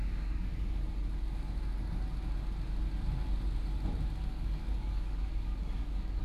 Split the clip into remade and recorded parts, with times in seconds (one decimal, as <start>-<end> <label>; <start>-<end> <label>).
0.0-0.5 remade; 0.5-4.2 recorded; 4.2-6.2 remade